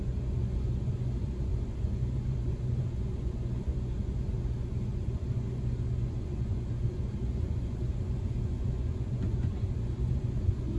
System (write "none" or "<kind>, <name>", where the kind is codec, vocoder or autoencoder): vocoder, Vocos